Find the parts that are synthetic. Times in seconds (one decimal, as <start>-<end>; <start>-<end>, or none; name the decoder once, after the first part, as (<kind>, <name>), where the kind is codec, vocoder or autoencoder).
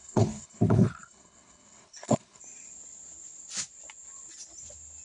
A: 0.0-2.4 (codec, HILCodec)